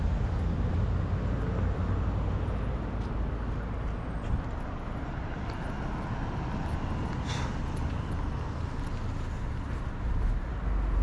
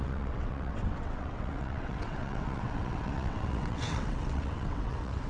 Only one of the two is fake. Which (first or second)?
second